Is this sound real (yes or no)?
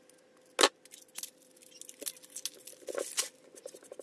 yes